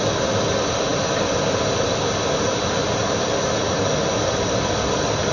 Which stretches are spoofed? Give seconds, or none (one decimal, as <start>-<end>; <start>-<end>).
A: none